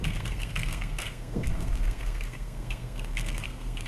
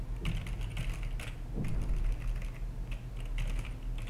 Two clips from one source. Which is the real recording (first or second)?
second